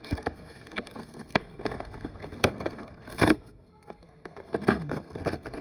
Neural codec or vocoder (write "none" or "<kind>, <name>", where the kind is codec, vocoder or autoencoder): codec, SNAC